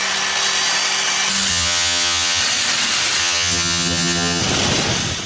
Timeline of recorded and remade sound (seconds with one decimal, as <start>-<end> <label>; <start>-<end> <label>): 0.0-1.5 recorded; 1.5-2.4 remade; 2.4-3.2 recorded; 3.2-4.4 remade; 4.4-5.3 recorded